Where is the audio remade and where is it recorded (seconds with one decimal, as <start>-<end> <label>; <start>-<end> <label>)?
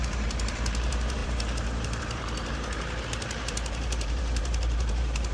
0.0-5.3 remade